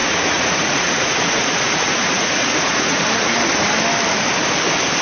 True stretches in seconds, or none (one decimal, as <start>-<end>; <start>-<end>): 3.0-5.0